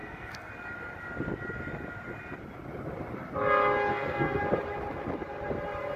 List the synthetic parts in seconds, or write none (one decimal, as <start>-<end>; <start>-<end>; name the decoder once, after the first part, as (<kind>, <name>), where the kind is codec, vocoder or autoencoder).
0.0-0.5 (codec, SNAC); 3.9-4.4